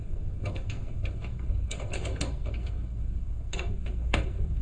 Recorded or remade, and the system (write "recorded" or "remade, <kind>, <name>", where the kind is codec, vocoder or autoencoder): remade, codec, SNAC